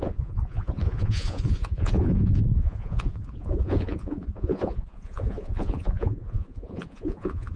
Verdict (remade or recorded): remade